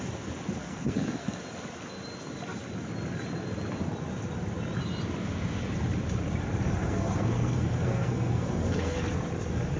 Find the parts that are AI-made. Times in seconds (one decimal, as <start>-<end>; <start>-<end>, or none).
0.6-1.4; 6.8-9.0